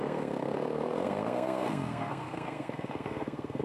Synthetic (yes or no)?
yes